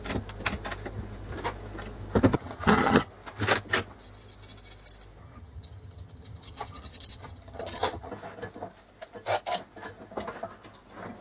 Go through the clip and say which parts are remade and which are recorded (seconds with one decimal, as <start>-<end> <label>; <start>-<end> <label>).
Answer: 0.0-2.3 recorded; 2.3-3.1 remade; 3.1-5.2 recorded; 5.2-8.1 remade; 8.1-11.2 recorded